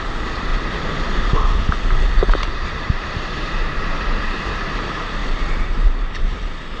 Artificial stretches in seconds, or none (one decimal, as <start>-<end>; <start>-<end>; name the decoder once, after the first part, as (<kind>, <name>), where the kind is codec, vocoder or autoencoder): 0.0-0.5 (vocoder, BigVGAN v2); 2.5-5.2